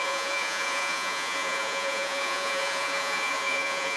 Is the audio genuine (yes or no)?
no